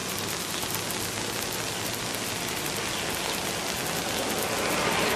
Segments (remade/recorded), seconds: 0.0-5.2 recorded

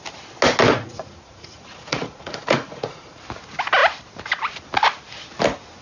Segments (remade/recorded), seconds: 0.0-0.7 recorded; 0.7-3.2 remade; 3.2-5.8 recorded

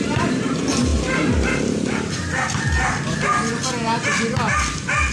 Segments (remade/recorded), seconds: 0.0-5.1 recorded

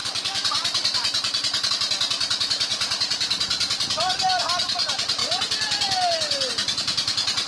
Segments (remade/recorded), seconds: 0.0-7.5 recorded

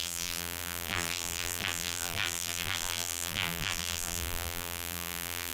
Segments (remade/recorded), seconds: 0.0-5.5 remade